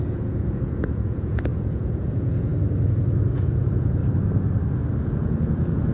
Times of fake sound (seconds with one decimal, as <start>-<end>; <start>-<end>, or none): 0.0-2.5; 3.3-4.0; 5.0-5.9

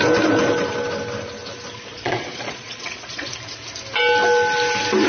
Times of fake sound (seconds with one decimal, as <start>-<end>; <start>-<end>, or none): 1.9-3.3